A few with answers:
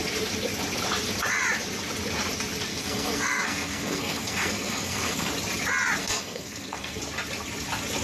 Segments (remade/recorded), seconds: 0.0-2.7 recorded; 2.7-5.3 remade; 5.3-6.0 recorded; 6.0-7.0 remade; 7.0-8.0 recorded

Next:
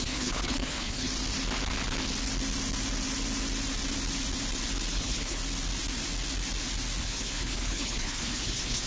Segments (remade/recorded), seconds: 0.0-1.1 remade; 1.1-4.9 recorded; 4.9-5.4 remade; 5.4-7.0 recorded; 7.0-8.9 remade

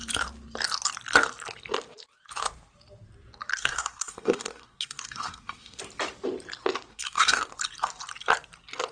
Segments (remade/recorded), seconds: 0.0-3.5 recorded; 3.5-5.8 remade; 5.8-6.9 recorded; 6.9-7.4 remade; 7.4-8.9 recorded

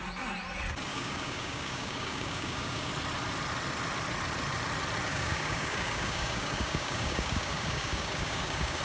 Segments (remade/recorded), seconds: 0.0-0.9 recorded; 0.9-2.9 remade; 2.9-5.1 recorded; 5.1-8.8 remade

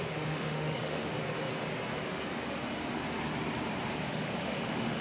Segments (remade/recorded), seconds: 0.0-1.1 remade; 1.1-4.1 recorded; 4.1-5.0 remade

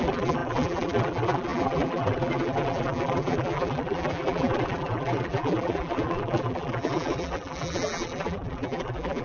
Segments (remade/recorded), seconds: 0.0-9.2 remade

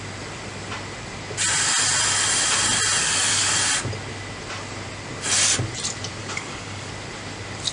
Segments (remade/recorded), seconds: 0.0-3.0 recorded; 3.0-3.5 remade; 3.5-6.2 recorded; 6.2-6.9 remade; 6.9-7.7 recorded